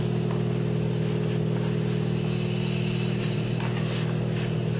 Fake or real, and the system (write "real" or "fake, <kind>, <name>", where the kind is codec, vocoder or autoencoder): real